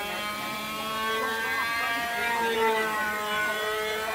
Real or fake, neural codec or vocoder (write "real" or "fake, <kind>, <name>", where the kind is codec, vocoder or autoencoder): fake, vocoder, BigVGAN v2